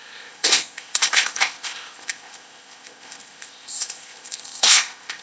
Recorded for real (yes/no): no